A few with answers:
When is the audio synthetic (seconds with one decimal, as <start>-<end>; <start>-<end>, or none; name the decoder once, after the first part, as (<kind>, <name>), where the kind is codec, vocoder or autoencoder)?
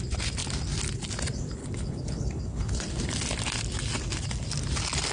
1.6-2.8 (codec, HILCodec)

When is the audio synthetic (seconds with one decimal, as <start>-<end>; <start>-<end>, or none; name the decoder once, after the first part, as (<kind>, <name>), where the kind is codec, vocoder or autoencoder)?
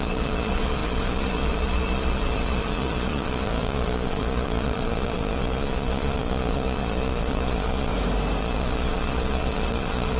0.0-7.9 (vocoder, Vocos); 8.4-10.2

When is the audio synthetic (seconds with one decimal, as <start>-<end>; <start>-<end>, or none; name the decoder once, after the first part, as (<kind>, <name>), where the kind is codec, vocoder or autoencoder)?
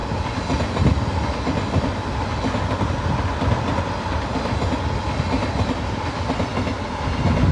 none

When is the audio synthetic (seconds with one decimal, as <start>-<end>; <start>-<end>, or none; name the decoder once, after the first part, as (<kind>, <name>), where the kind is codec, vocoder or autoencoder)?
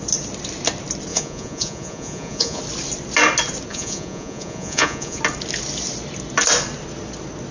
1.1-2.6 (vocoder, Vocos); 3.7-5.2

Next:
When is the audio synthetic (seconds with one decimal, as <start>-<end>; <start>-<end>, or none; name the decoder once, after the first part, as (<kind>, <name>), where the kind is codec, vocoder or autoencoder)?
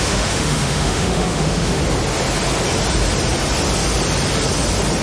0.0-1.8 (autoencoder, DAC-VAE)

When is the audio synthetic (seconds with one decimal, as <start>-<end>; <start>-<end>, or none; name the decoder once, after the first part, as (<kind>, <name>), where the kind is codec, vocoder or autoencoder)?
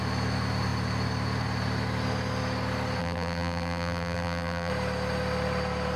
3.0-4.7 (vocoder, BigVGAN v2)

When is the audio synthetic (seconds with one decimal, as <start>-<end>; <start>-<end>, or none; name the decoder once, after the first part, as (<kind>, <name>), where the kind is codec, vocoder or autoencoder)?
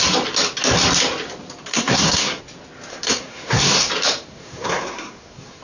1.7-2.4 (codec, SNAC); 2.9-3.9; 4.3-5.6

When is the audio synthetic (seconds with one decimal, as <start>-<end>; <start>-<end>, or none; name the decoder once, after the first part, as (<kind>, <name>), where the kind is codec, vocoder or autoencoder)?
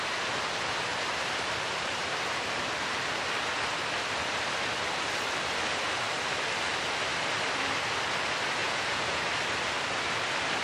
8.6-9.2 (vocoder, Vocos)